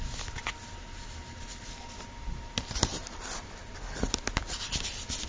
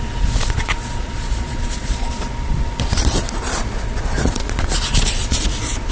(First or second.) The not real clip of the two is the second